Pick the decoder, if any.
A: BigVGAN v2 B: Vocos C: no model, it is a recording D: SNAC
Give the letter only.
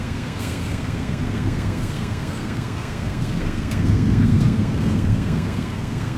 D